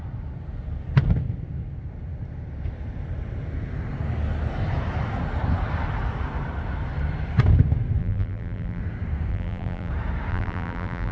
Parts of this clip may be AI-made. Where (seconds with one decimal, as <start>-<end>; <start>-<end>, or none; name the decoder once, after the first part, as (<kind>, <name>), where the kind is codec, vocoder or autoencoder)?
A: 8.0-8.8 (vocoder, BigVGAN v2); 9.3-9.9; 10.3-11.1